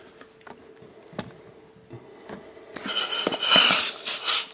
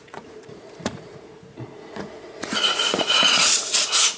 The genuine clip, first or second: first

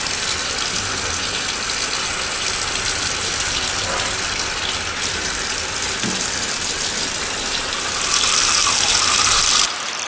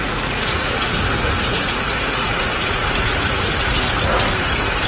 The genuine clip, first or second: first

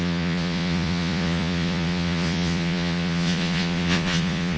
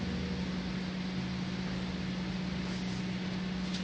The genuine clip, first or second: second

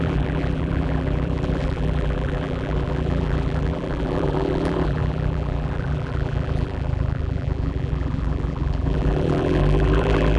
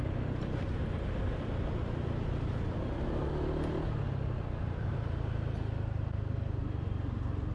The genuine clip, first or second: second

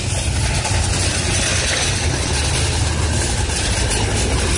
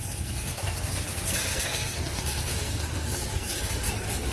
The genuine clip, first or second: first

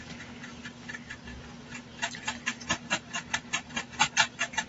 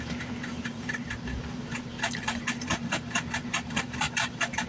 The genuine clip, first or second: first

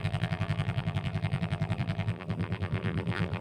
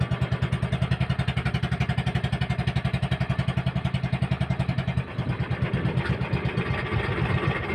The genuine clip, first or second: second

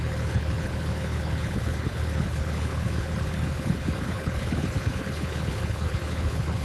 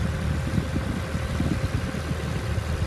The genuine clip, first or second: second